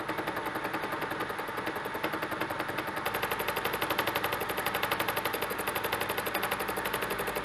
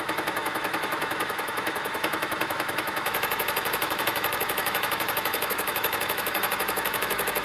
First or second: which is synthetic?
second